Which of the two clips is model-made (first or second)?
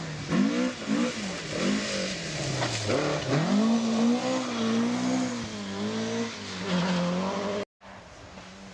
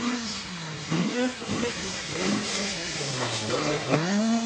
second